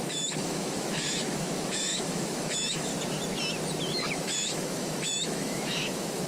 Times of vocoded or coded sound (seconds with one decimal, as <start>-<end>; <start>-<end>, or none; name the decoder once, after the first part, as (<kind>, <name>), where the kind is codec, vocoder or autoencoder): 0.0-2.9 (autoencoder, DAC-VAE); 4.1-6.3